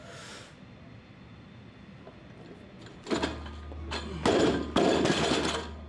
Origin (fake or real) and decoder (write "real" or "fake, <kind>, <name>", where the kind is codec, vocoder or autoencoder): real